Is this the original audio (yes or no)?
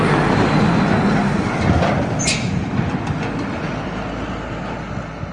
yes